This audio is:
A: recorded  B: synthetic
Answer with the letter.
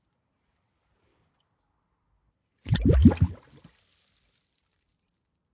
A